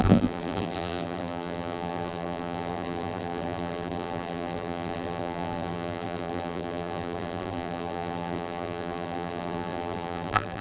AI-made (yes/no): yes